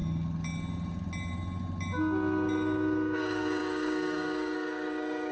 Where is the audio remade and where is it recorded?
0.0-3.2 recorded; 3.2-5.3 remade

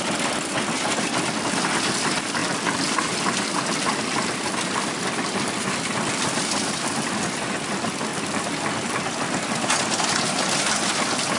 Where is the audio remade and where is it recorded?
0.0-2.4 recorded; 2.4-7.1 remade; 7.1-8.1 recorded; 8.1-9.1 remade; 9.1-11.4 recorded

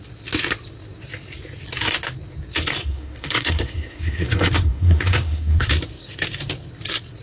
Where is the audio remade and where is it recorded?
0.0-2.8 recorded; 2.8-5.7 remade; 5.7-7.2 recorded